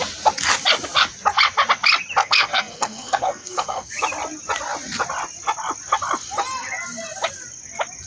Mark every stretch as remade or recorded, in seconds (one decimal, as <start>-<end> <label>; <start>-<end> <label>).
0.0-2.2 recorded; 2.2-3.9 remade; 3.9-8.1 recorded